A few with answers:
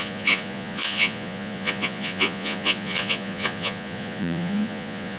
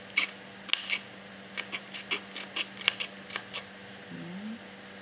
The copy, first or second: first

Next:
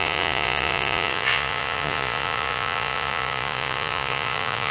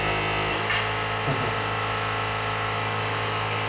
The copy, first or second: first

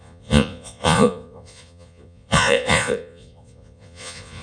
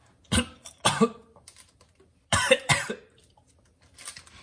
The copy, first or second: first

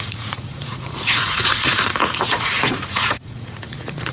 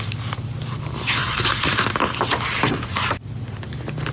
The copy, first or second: first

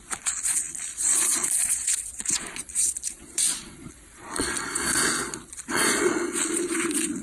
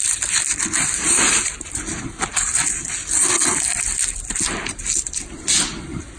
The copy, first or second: first